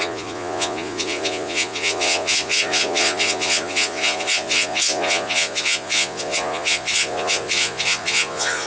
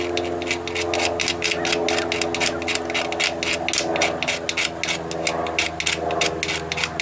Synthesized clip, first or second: first